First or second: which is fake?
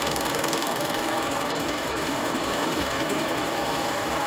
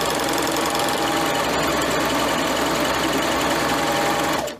first